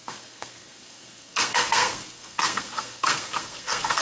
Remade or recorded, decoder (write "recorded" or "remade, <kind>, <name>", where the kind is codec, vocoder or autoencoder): remade, codec, SNAC